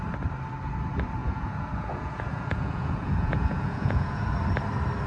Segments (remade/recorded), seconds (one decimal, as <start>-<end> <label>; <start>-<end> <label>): 0.0-1.2 recorded; 1.2-4.3 remade; 4.3-5.1 recorded